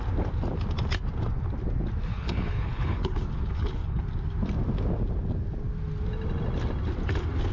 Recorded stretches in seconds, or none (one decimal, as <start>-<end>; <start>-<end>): 0.0-2.1; 4.0-7.5